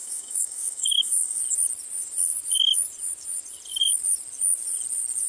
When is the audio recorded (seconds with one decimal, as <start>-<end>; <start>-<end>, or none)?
1.4-5.3

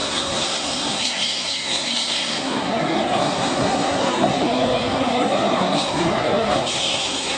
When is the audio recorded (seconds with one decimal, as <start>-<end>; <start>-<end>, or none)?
none